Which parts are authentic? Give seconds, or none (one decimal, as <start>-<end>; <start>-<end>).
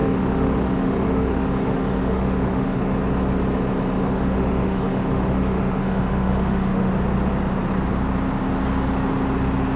2.8-4.0; 6.9-9.8